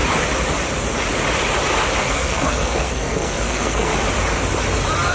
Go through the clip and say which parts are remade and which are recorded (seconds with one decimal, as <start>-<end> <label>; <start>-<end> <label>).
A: 0.0-2.0 recorded; 2.0-3.9 remade; 3.9-5.1 recorded